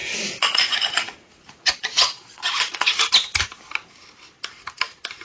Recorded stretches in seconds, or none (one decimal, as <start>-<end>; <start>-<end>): 3.1-5.2